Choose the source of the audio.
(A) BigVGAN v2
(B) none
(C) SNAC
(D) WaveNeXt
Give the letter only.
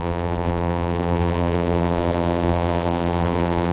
A